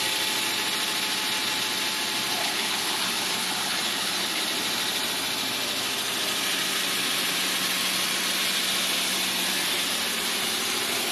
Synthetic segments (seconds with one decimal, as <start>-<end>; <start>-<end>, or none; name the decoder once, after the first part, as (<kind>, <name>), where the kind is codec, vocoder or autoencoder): 2.4-4.4 (codec, HILCodec)